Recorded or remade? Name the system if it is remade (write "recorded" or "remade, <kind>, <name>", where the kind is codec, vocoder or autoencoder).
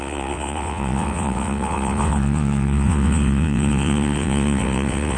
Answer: remade, vocoder, WaveNeXt